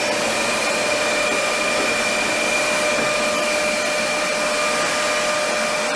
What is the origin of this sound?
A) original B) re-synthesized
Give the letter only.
A